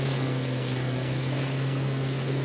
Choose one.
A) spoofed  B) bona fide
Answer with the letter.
A